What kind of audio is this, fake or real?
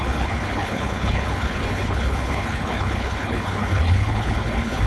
fake